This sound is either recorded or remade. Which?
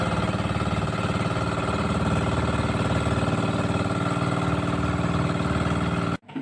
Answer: recorded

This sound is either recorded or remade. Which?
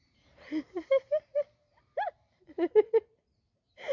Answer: remade